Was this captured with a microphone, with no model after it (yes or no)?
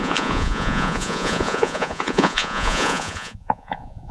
no